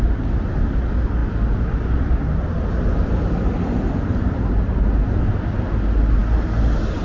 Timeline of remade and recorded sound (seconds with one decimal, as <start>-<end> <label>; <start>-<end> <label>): 0.0-7.0 recorded

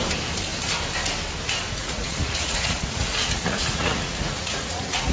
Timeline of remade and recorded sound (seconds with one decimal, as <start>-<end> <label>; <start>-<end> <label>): 0.0-1.8 recorded; 1.8-5.1 remade

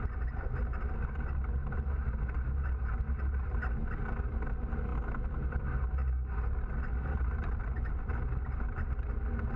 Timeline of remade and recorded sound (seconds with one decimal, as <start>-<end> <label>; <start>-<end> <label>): 0.0-9.6 recorded

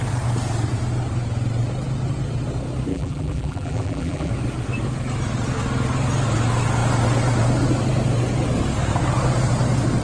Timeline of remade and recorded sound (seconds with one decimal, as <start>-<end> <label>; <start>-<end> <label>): 0.0-2.9 recorded; 2.9-4.3 remade; 4.3-10.0 recorded

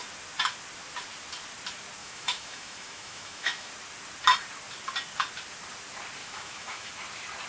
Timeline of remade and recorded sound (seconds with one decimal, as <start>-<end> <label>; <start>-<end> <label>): 0.0-2.0 recorded; 2.0-3.7 remade; 3.7-6.2 recorded; 6.2-6.9 remade; 6.9-7.5 recorded